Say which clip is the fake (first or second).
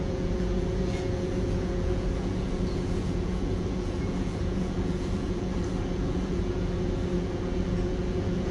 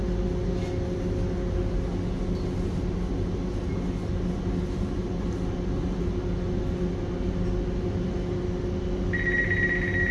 first